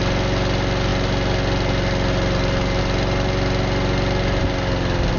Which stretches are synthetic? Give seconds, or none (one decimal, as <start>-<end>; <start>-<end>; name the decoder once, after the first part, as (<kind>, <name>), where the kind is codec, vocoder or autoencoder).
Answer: none

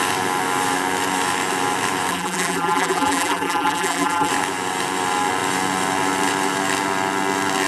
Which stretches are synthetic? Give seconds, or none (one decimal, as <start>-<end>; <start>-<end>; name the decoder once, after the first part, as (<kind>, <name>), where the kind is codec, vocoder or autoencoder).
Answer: 2.1-4.3 (vocoder, BigVGAN v2)

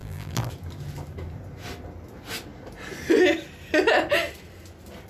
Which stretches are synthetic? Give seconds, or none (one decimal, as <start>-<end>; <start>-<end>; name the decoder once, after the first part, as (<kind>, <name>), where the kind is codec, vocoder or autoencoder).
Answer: 0.0-0.5 (vocoder, BigVGAN v2)

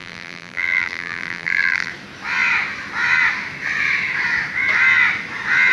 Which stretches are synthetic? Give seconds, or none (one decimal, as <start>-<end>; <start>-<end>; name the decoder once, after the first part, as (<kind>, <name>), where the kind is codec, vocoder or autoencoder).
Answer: 0.0-1.9 (vocoder, BigVGAN v2)